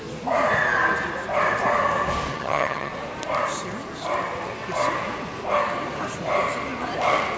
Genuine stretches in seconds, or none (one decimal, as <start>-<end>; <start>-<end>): 0.0-2.3; 2.9-7.4